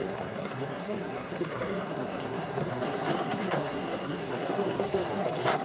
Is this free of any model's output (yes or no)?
no